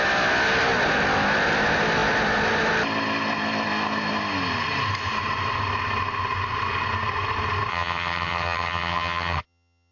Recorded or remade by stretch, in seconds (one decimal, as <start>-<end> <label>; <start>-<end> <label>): 0.0-7.7 recorded; 7.7-9.9 remade